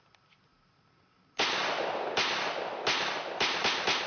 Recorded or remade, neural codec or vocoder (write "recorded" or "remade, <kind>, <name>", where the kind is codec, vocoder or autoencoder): recorded